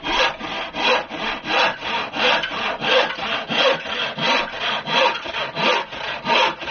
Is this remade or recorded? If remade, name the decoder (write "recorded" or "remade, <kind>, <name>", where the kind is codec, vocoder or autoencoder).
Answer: recorded